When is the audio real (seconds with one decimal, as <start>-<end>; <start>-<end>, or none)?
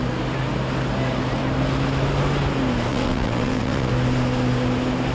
0.0-2.9; 3.9-5.1